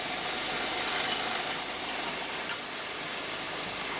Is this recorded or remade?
recorded